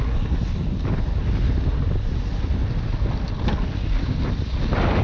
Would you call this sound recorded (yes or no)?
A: yes